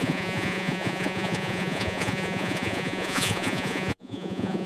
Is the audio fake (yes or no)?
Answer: yes